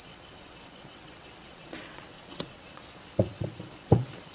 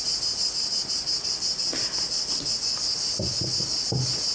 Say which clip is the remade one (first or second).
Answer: first